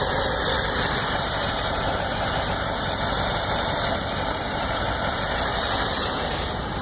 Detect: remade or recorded remade